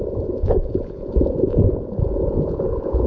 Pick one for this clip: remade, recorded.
remade